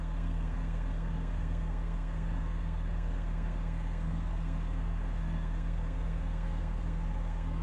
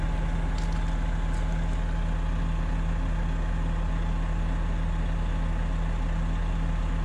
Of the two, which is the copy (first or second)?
first